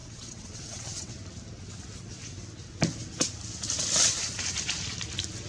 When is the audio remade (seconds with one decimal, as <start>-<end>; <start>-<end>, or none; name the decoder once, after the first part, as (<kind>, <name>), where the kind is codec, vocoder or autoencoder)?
0.0-1.1 (vocoder, WaveNeXt)